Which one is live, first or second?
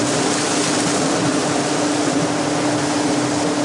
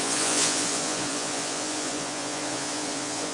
first